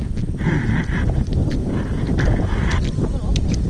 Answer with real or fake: real